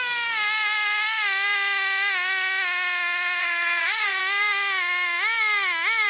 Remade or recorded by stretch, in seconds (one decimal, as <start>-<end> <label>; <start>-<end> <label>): 0.0-3.4 recorded; 3.4-4.2 remade; 4.2-6.1 recorded